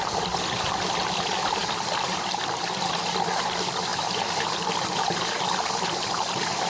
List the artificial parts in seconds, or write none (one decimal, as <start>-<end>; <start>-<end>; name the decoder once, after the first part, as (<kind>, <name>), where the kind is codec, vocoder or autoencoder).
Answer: none